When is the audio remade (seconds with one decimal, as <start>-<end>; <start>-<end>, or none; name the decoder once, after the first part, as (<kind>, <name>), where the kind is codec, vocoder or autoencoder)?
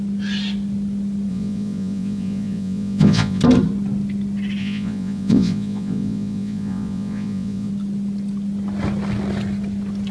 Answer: 1.3-3.4 (vocoder, Vocos); 4.6-7.7